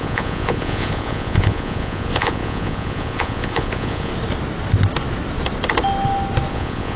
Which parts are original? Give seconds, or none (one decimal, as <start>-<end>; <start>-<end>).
4.1-6.5